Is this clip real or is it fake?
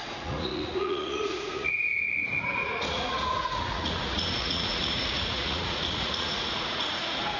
fake